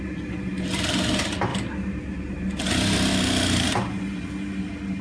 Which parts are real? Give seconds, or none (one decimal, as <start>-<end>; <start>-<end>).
0.0-5.0

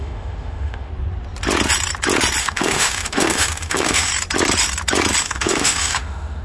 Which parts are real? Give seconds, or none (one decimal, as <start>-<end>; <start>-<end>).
0.9-2.4; 4.1-5.2